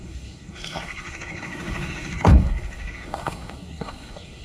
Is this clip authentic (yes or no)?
no